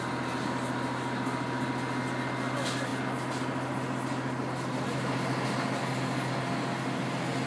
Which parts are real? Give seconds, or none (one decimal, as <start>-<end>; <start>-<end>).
0.0-7.5